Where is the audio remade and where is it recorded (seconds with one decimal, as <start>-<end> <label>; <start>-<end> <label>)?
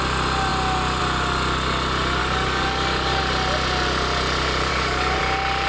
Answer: 0.0-2.2 recorded; 2.2-3.2 remade; 3.2-4.7 recorded; 4.7-5.2 remade; 5.2-5.7 recorded